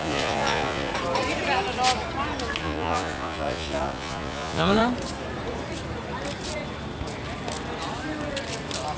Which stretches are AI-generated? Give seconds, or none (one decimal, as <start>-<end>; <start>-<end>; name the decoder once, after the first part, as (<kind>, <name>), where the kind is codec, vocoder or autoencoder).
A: 0.0-0.9 (vocoder, Vocos); 2.6-4.8